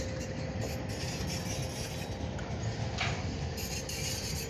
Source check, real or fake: real